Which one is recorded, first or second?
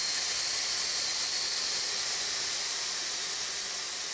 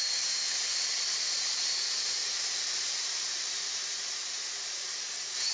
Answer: first